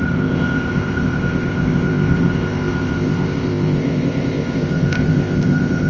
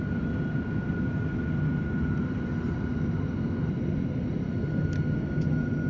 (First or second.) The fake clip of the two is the first